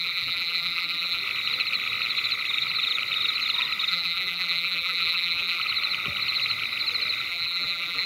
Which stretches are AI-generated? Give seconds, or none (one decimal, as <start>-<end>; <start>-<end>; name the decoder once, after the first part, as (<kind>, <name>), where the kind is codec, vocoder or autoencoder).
0.0-1.2 (vocoder, BigVGAN v2); 3.9-5.6; 7.3-8.1